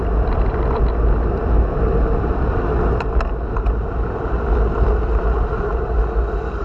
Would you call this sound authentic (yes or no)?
yes